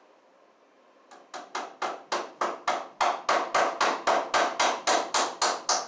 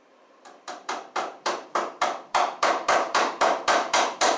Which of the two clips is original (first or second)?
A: first